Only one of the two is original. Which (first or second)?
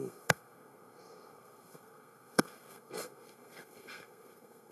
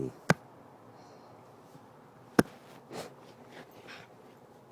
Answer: second